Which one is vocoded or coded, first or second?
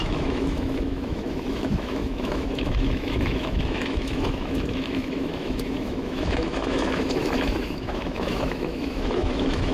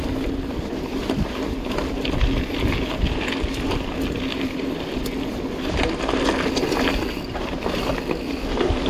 first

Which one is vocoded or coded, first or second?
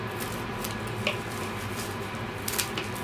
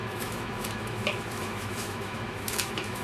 second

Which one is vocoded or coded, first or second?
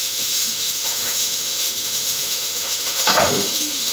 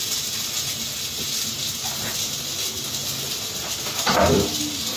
first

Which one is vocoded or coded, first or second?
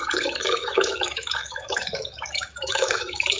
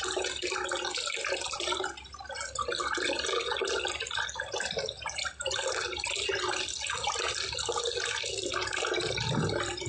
first